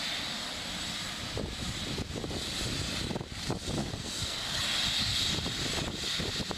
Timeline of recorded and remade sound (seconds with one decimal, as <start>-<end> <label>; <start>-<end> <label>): 0.0-3.8 recorded; 3.8-4.6 remade; 4.6-6.6 recorded